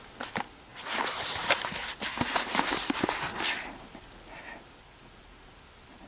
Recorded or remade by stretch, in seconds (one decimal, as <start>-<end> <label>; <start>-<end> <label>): 0.0-6.1 recorded